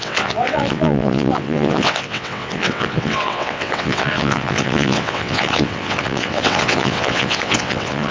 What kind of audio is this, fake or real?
fake